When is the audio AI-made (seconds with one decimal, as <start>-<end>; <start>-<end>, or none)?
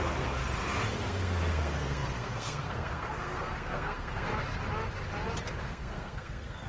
0.0-0.4; 1.0-4.3; 5.6-6.7